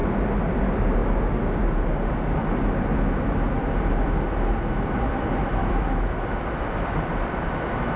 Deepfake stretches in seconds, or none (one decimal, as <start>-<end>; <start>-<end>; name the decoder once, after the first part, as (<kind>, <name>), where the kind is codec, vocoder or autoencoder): 5.6-6.4 (autoencoder, DAC-VAE)